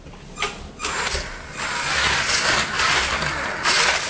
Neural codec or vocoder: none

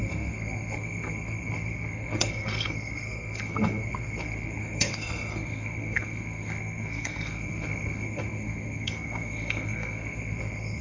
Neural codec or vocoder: codec, SNAC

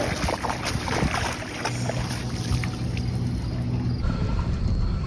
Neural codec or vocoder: none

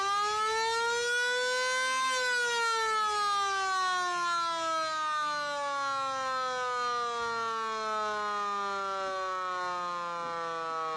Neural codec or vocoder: none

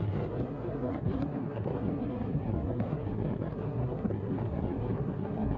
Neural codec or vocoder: codec, SNAC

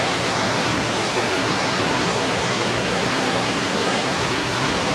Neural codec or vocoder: codec, SNAC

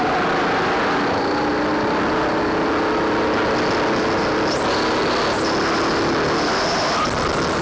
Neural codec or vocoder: none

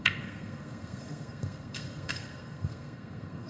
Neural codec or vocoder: codec, SNAC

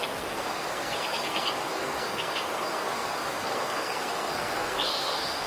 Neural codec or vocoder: codec, SNAC